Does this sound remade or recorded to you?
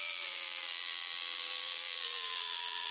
remade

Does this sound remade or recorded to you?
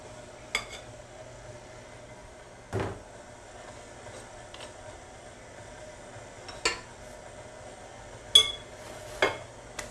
recorded